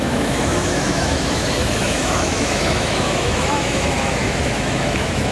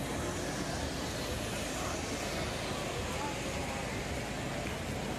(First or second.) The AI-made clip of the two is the first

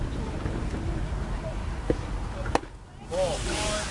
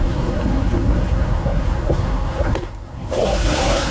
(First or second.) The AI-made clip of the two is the second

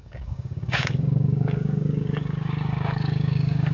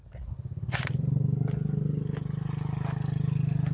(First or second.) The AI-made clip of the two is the first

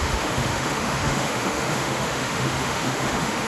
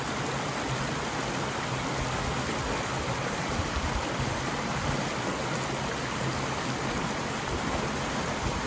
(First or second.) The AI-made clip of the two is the first